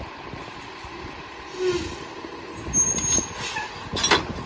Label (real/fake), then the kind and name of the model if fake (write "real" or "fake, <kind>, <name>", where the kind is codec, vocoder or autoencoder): real